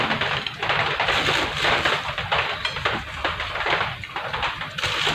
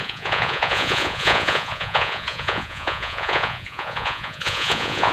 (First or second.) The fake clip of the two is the second